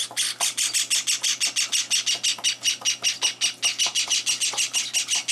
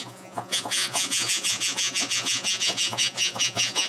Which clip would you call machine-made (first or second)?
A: second